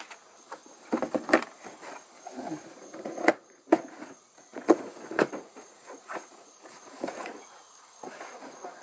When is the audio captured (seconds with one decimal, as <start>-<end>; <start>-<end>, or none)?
0.6-2.7

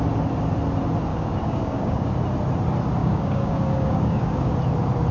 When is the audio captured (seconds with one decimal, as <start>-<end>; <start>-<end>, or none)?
0.0-1.1; 2.1-3.0; 4.5-5.1